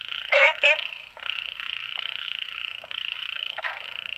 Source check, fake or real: fake